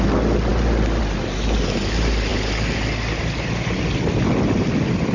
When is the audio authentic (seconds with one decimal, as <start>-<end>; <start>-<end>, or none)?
0.0-5.1